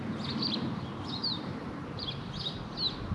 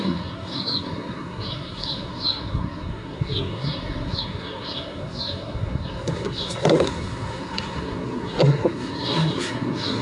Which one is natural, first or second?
first